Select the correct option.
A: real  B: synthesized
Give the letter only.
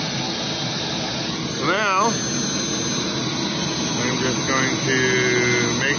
A